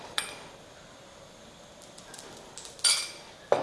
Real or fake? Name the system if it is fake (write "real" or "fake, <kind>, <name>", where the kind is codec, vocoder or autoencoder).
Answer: real